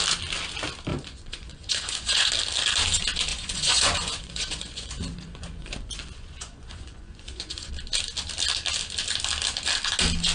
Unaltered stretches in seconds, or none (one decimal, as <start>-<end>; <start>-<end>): 0.0-0.9; 2.3-3.3; 7.7-10.3